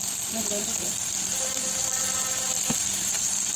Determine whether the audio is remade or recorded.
recorded